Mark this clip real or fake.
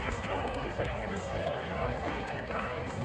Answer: fake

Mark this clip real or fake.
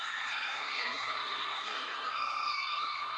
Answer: fake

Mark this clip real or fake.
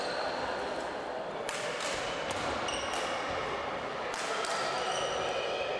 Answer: real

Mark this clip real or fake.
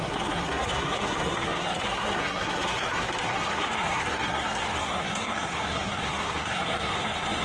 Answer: fake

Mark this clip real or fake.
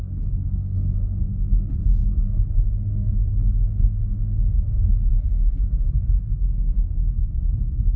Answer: fake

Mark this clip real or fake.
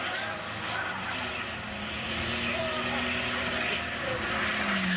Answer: real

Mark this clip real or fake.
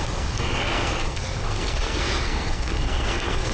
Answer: fake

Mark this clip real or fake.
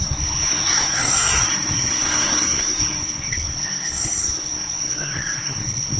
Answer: fake